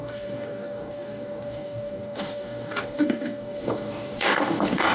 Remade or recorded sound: remade